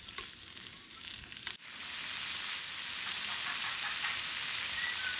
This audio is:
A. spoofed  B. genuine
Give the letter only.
B